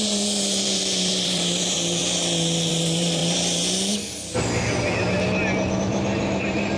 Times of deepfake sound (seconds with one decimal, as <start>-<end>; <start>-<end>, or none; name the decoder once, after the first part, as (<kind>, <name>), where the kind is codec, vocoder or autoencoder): 0.0-2.0 (vocoder, BigVGAN v2); 2.7-3.2; 5.8-6.8